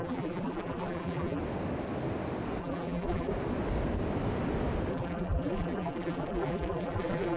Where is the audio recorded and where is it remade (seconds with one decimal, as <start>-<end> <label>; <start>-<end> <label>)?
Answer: 0.0-1.4 remade; 1.4-2.6 recorded; 2.6-3.3 remade; 3.3-4.9 recorded; 4.9-7.4 remade